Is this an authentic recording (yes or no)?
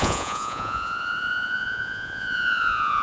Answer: no